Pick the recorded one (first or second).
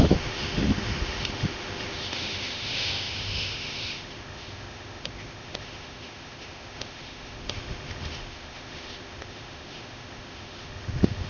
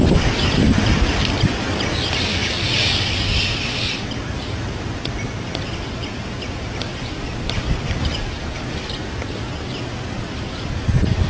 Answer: second